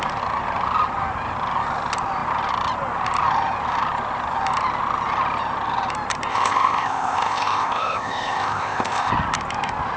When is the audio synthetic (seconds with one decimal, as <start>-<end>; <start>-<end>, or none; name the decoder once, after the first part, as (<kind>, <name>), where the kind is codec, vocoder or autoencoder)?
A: 6.3-9.1 (codec, ZipCodec)